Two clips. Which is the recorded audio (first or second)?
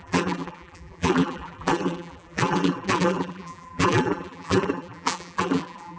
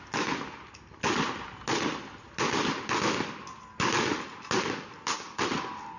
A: second